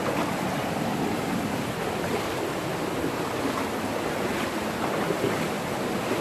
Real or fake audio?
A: real